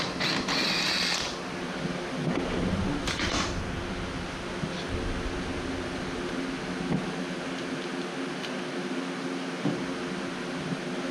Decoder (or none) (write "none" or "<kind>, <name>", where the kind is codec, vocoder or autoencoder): none